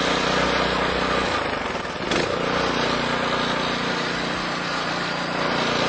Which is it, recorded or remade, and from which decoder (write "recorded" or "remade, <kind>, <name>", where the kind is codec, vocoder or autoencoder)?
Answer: recorded